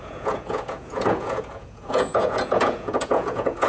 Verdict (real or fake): fake